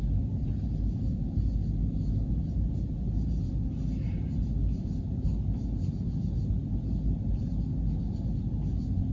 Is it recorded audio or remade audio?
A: recorded